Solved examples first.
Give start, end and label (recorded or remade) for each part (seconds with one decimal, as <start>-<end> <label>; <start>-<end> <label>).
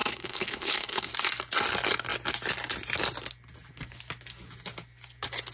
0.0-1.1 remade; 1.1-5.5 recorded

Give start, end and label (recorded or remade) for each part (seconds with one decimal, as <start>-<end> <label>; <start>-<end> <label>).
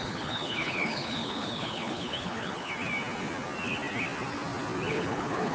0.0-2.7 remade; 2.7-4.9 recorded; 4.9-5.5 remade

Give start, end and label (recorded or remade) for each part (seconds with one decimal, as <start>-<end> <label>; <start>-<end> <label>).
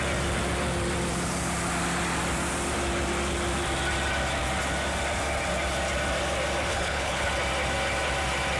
0.0-6.7 recorded; 6.7-7.3 remade; 7.3-8.6 recorded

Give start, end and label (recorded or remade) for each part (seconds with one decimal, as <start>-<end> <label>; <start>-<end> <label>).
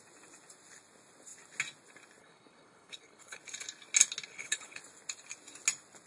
0.0-2.2 recorded; 2.2-3.4 remade; 3.4-4.3 recorded; 4.3-4.8 remade; 4.8-6.1 recorded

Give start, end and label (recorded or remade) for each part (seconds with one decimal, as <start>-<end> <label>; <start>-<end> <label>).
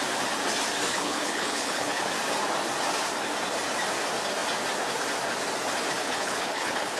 0.0-0.9 recorded; 0.9-2.0 remade; 2.0-6.0 recorded; 6.0-7.0 remade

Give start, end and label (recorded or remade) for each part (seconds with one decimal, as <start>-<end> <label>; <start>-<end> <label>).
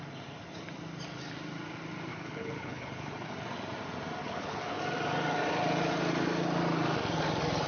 0.0-2.1 recorded; 2.1-3.3 remade; 3.3-4.2 recorded; 4.2-4.8 remade; 4.8-7.7 recorded